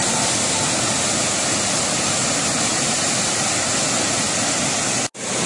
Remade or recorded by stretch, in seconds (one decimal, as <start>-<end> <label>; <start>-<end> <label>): 0.0-2.7 recorded; 2.7-3.3 remade; 3.3-5.5 recorded